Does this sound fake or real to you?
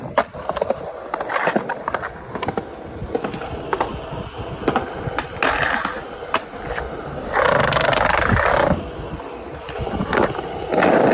real